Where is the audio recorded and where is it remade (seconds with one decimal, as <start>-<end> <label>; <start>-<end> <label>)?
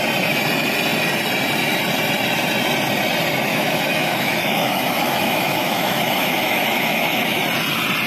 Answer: 0.0-3.5 recorded; 3.5-7.4 remade; 7.4-8.1 recorded